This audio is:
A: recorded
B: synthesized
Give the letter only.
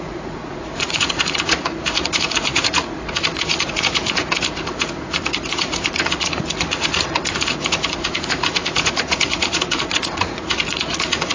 B